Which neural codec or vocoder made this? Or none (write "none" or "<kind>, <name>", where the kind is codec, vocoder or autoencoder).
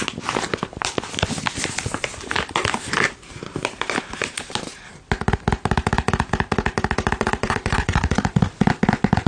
none